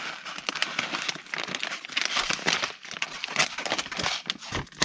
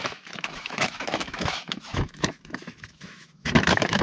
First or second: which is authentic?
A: first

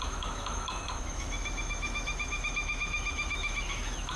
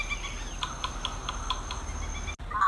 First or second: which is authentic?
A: second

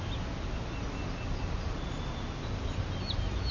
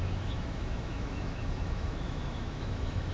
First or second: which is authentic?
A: first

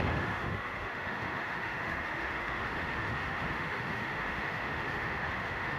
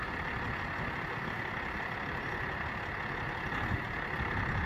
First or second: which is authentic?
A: second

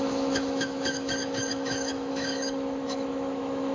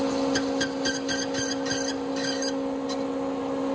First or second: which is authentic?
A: second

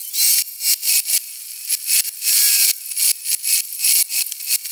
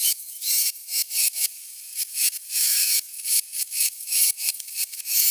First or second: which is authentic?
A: first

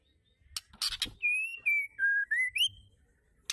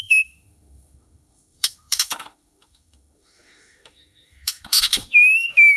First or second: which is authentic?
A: first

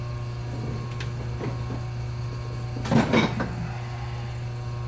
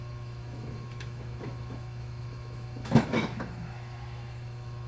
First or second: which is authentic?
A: first